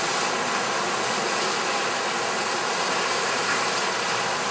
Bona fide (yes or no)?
yes